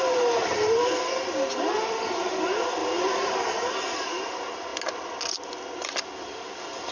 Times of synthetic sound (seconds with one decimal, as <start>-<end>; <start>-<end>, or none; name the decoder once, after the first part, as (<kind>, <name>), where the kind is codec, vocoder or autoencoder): 2.8-3.7 (vocoder, BigVGAN v2)